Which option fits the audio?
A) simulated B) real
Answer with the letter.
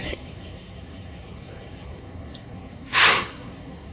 A